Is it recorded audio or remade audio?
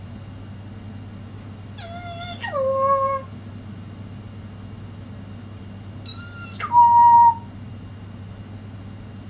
recorded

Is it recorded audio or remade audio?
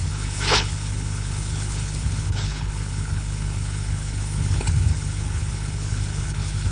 remade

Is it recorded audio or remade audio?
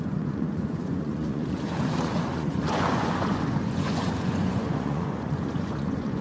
remade